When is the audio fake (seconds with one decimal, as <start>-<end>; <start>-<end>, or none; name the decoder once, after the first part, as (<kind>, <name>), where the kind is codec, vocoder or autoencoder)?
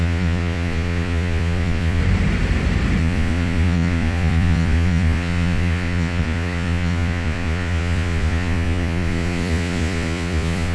0.0-2.0 (vocoder, Vocos); 3.0-10.7